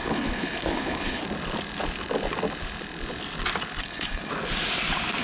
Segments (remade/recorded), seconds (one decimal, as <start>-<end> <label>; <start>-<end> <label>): 0.0-1.2 remade; 1.2-3.8 recorded; 3.8-4.3 remade; 4.3-5.2 recorded